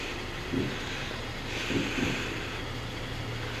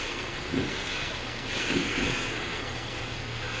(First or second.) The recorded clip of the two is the first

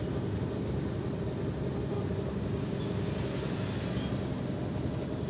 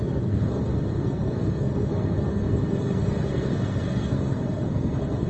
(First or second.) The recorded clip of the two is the first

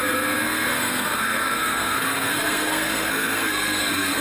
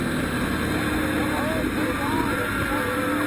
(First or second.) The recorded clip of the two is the second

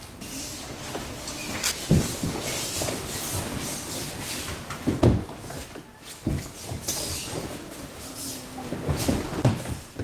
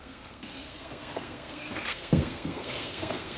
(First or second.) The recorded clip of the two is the first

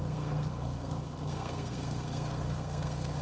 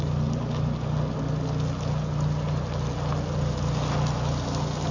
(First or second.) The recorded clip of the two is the second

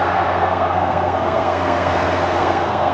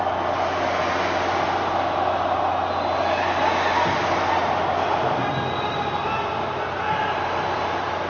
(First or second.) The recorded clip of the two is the second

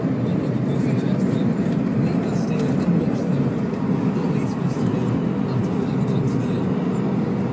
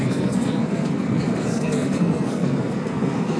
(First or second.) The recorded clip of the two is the first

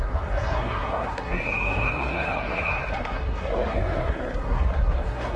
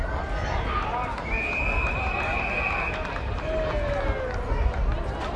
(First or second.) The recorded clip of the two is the second